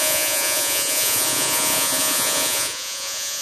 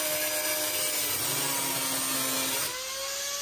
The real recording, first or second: second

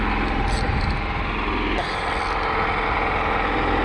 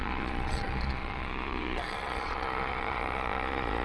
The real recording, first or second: first